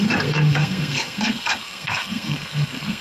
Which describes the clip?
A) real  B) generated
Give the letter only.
B